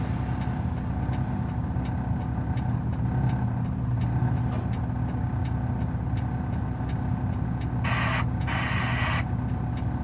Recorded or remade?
recorded